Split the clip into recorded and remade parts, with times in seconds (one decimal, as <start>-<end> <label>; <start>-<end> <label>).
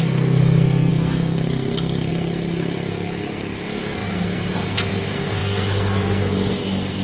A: 0.0-7.0 remade